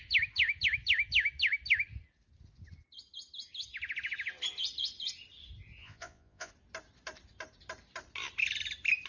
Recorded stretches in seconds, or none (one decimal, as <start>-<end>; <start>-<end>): 0.0-5.8; 6.5-9.1